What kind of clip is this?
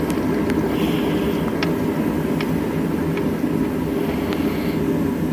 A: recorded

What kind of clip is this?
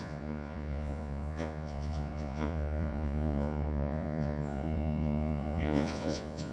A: remade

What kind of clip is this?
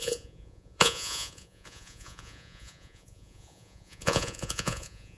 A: remade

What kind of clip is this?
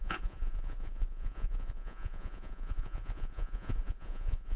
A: remade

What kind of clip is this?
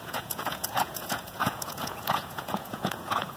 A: remade